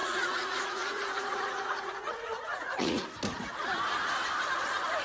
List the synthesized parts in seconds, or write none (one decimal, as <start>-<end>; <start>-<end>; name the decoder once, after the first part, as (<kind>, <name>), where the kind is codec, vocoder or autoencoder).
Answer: 0.0-3.0 (vocoder, Vocos)